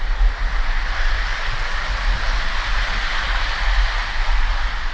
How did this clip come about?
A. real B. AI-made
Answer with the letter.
A